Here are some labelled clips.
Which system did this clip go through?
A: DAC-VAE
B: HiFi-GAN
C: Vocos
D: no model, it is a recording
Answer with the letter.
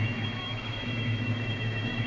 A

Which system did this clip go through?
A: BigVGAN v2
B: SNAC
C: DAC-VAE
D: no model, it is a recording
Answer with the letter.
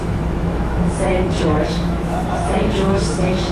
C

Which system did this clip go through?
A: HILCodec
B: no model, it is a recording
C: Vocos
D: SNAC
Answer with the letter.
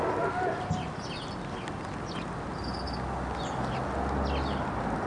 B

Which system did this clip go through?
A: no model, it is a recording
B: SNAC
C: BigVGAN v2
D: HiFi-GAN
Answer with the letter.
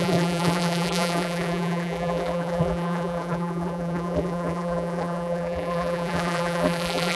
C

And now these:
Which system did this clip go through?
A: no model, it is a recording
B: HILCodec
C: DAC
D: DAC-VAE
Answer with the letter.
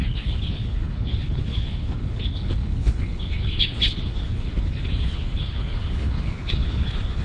B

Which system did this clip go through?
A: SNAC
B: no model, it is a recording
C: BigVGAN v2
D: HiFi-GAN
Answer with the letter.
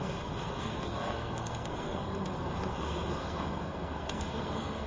A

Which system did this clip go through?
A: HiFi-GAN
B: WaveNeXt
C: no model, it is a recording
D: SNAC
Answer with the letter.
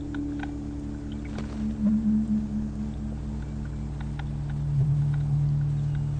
C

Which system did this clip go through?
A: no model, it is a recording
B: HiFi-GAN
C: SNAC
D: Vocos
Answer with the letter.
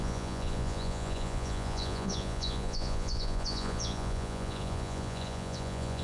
D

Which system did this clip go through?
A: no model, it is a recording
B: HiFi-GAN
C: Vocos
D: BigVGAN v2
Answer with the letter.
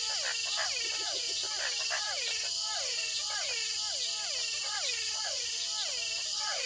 A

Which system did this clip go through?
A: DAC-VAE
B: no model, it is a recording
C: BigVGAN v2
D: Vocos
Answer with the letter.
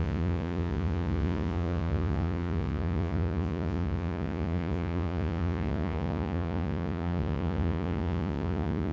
D